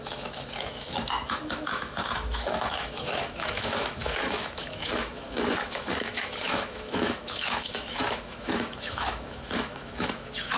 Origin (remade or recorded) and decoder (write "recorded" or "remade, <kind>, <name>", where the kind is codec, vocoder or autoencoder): remade, autoencoder, DAC-VAE